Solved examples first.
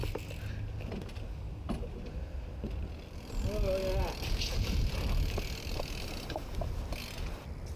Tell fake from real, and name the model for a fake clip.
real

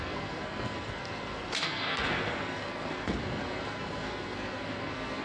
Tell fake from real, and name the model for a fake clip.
fake, codec, SNAC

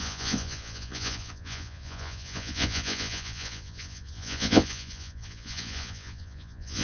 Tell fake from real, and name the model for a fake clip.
fake, vocoder, Vocos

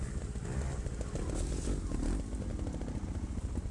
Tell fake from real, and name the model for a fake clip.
real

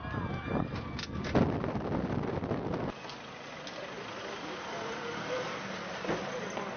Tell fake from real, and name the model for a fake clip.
real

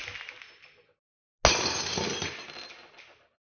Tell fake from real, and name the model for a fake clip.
real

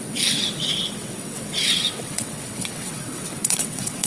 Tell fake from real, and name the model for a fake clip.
fake, vocoder, WaveNeXt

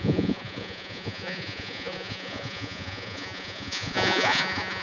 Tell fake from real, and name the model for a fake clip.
fake, vocoder, Vocos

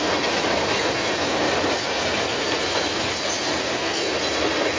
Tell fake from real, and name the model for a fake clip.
real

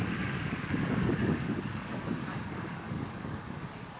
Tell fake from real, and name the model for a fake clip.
fake, codec, DAC